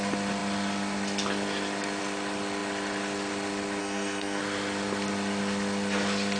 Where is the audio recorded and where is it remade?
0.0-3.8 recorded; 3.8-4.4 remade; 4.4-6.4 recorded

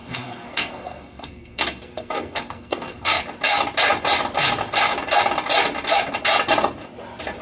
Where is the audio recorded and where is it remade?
0.0-3.2 remade; 3.2-7.4 recorded

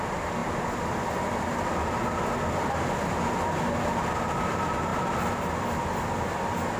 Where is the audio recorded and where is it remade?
0.0-6.8 recorded

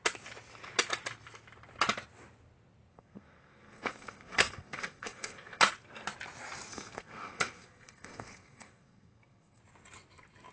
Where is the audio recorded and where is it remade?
0.0-2.9 recorded; 2.9-5.6 remade; 5.6-6.7 recorded; 6.7-9.6 remade; 9.6-10.5 recorded

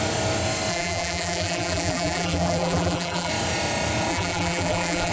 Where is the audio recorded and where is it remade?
0.0-0.7 recorded; 0.7-3.3 remade; 3.3-4.1 recorded; 4.1-5.1 remade

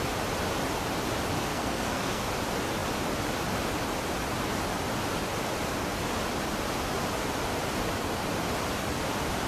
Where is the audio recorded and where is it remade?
0.0-1.5 recorded; 1.5-2.3 remade; 2.3-9.5 recorded

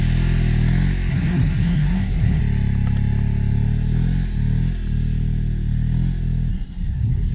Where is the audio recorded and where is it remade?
0.0-1.1 recorded; 1.1-2.4 remade; 2.4-6.5 recorded; 6.5-7.3 remade